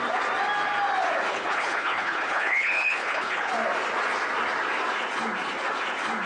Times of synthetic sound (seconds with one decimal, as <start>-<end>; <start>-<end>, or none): 1.3-3.5